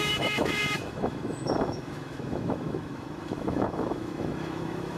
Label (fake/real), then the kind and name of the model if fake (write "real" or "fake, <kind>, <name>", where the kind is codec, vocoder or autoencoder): fake, autoencoder, DAC-VAE